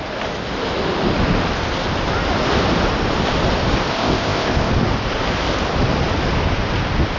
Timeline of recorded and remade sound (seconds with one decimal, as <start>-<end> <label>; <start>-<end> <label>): 0.0-3.9 recorded; 3.9-4.7 remade; 4.7-7.2 recorded